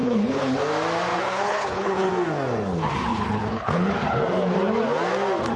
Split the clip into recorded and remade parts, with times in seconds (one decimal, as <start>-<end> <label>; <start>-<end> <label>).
0.0-0.6 remade; 0.6-1.1 recorded; 1.1-2.1 remade; 2.1-3.1 recorded; 3.1-3.9 remade; 3.9-5.6 recorded